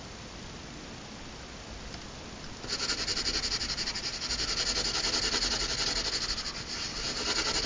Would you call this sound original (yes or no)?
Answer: yes